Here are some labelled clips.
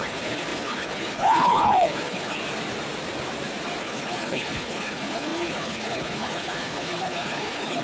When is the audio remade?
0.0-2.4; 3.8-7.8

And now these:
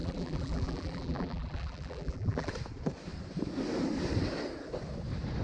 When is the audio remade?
0.0-2.5

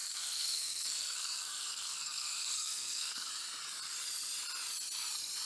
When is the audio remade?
0.0-3.3

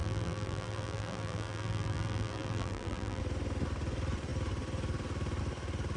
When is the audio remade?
0.0-3.2

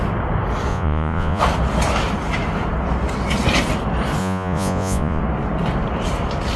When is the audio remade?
0.7-1.4; 4.2-5.2